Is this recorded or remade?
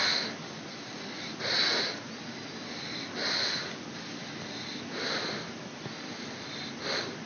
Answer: recorded